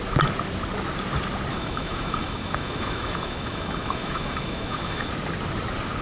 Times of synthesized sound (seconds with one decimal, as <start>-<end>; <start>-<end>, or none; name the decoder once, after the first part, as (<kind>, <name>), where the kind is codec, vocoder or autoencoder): 1.5-5.1 (autoencoder, DAC-VAE)